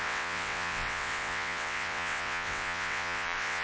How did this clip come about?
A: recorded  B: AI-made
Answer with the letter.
B